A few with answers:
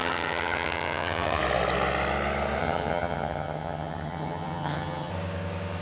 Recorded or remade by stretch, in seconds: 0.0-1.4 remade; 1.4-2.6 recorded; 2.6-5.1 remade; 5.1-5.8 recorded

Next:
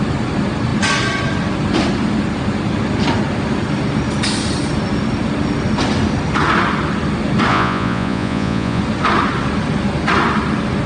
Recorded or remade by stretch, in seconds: 0.0-7.5 recorded; 7.5-8.8 remade; 8.8-10.9 recorded

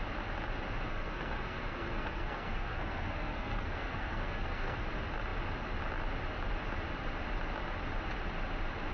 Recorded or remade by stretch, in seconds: 0.0-0.9 recorded; 0.9-4.8 remade; 4.8-8.9 recorded

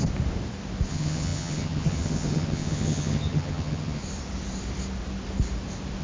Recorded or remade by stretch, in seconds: 0.0-0.9 recorded; 0.9-4.0 remade; 4.0-6.0 recorded

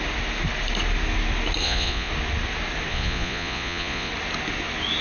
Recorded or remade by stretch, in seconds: 0.0-1.6 recorded; 1.6-2.1 remade; 2.1-2.9 recorded; 2.9-4.1 remade; 4.1-5.0 recorded

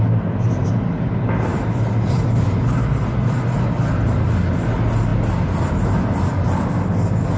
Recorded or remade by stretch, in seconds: 0.0-1.5 recorded; 1.5-2.2 remade; 2.2-7.4 recorded

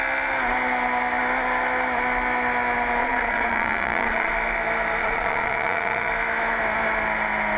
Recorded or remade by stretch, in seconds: 0.0-3.0 recorded; 3.0-4.3 remade; 4.3-5.0 recorded; 5.0-6.1 remade; 6.1-7.6 recorded

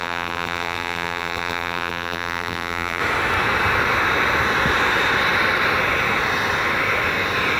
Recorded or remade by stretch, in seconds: 0.0-3.0 remade; 3.0-7.6 recorded